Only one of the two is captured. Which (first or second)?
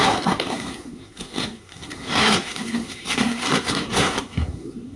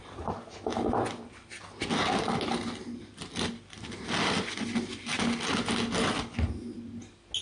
second